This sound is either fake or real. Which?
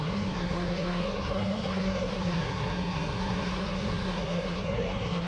fake